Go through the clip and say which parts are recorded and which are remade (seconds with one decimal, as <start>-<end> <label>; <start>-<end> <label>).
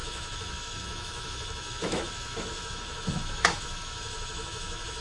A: 0.0-5.0 remade